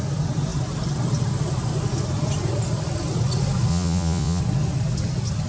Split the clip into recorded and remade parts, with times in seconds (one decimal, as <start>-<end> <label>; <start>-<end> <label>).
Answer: 0.0-3.7 recorded; 3.7-4.4 remade; 4.4-5.5 recorded